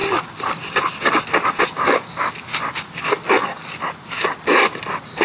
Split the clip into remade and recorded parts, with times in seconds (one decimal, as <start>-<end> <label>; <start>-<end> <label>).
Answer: 0.0-5.2 recorded